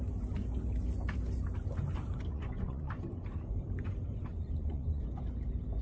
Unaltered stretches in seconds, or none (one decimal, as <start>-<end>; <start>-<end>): 0.0-2.3; 2.9-4.3; 5.0-5.8